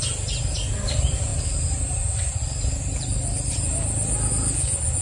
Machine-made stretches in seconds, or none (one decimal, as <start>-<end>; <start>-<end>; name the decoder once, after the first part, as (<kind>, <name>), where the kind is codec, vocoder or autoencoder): none